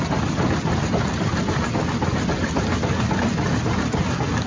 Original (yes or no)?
yes